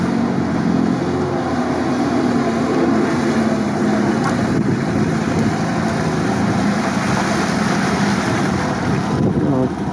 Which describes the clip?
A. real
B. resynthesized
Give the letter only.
A